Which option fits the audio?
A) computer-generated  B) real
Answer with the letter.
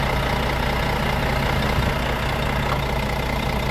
B